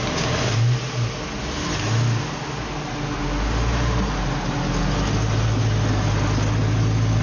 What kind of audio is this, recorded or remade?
recorded